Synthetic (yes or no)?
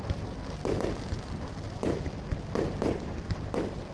no